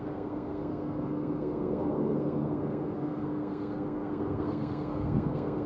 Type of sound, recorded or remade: remade